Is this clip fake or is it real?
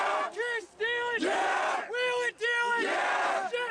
real